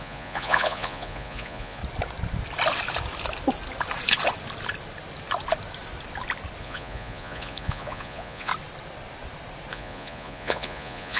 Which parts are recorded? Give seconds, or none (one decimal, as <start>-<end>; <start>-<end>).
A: 1.8-6.6; 8.5-9.7